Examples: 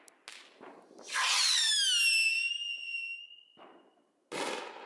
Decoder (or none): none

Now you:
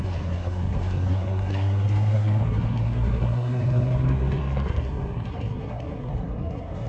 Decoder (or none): codec, SNAC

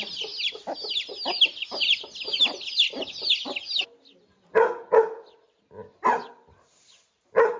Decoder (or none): none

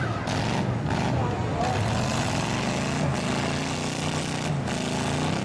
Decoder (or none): none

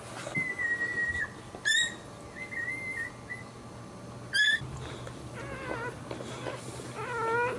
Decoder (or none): none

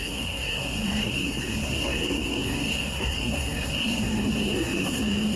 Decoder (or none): codec, SNAC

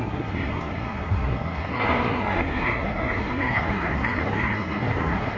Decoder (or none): codec, SNAC